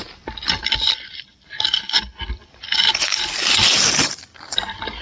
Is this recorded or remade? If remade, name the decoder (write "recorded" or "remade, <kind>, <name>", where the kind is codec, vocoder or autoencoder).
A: recorded